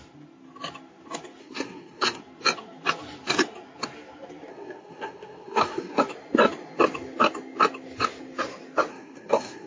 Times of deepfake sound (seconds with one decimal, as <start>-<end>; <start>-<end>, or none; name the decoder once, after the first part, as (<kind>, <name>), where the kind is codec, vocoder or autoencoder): 1.4-2.2 (codec, SNAC); 4.5-6.0; 8.9-9.7